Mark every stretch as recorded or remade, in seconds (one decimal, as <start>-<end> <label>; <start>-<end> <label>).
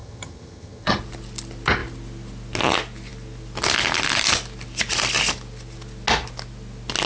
0.0-1.0 remade; 1.0-7.1 recorded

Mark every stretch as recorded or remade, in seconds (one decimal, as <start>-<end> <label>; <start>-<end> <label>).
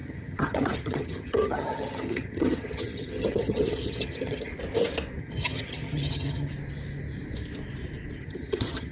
0.0-4.5 remade; 4.5-5.2 recorded; 5.2-6.5 remade; 6.5-8.2 recorded; 8.2-8.9 remade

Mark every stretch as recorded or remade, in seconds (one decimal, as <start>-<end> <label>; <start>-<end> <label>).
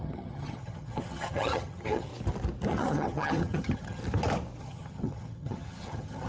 0.0-2.1 remade; 2.1-2.7 recorded; 2.7-4.0 remade; 4.0-4.6 recorded; 4.6-6.3 remade